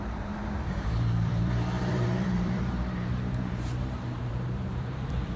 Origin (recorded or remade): remade